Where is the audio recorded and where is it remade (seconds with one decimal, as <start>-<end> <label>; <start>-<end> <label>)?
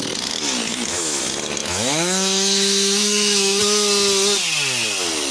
0.0-0.7 recorded; 0.7-1.2 remade; 1.2-1.6 recorded; 1.6-3.6 remade; 3.6-5.3 recorded